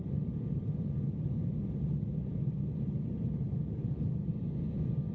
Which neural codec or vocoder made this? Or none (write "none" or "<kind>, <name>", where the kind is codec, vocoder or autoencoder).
none